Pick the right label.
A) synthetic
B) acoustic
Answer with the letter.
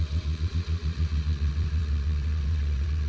A